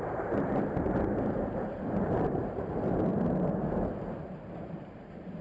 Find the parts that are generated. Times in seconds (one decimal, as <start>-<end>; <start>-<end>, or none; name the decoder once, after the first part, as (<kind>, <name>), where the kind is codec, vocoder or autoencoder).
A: 0.0-3.1 (vocoder, BigVGAN v2); 4.5-5.4